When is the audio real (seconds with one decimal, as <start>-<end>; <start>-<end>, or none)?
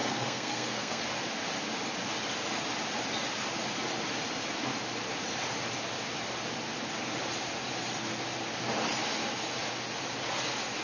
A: 1.0-10.8